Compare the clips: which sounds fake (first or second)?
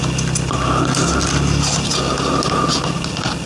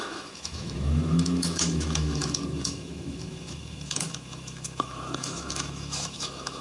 second